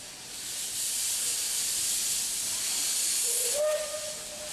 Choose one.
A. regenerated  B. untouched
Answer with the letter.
B